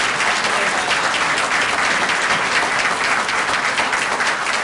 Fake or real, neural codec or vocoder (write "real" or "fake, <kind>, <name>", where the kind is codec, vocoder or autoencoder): real